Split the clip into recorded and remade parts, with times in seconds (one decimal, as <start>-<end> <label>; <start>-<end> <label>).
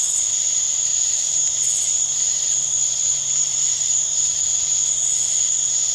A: 0.0-0.9 recorded; 0.9-4.3 remade; 4.3-5.9 recorded